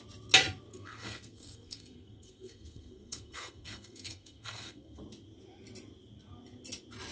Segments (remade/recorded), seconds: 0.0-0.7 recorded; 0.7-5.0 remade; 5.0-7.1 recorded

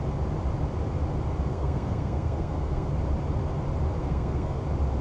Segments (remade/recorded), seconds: 0.0-1.5 recorded; 1.5-3.0 remade; 3.0-4.0 recorded; 4.0-4.6 remade; 4.6-5.0 recorded

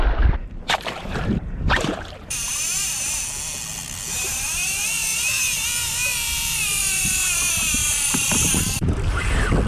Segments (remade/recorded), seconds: 0.0-0.4 recorded; 0.4-2.5 remade; 2.5-5.0 recorded; 5.0-6.8 remade; 6.8-7.8 recorded; 7.8-9.2 remade; 9.2-9.7 recorded

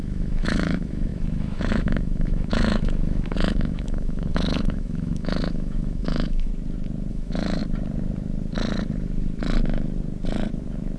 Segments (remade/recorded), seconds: 0.0-6.5 remade; 6.5-7.1 recorded; 7.1-7.6 remade; 7.6-11.0 recorded